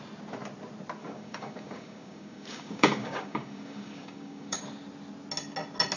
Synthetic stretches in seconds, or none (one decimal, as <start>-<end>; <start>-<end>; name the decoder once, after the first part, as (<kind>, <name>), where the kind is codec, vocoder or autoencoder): 1.0-4.6 (codec, DAC)